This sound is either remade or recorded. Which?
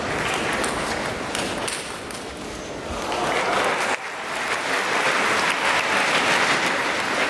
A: recorded